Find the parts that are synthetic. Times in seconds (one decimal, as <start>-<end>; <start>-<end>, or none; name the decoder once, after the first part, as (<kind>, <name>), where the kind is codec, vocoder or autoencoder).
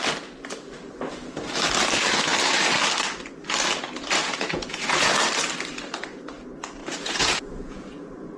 4.2-5.1 (vocoder, Vocos); 6.8-8.4